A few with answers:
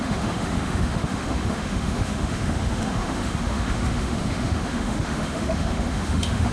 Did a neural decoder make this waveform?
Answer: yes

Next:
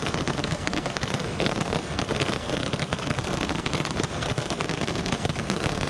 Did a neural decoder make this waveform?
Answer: yes